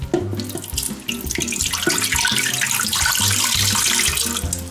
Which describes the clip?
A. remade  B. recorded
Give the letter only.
B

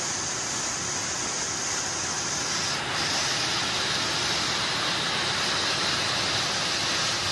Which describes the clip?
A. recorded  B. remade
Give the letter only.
A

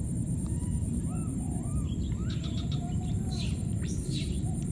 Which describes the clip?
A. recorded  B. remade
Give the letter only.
B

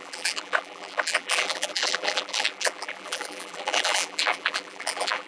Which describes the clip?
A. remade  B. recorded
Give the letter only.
A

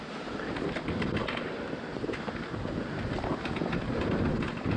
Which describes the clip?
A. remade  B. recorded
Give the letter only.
B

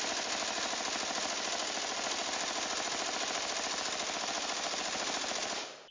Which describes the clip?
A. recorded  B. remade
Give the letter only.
B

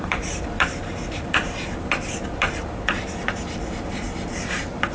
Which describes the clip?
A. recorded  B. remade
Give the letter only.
B